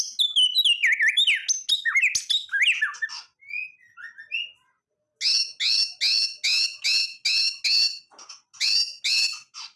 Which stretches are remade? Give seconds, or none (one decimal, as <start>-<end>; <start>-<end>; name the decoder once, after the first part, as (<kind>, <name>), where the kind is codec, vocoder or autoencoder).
none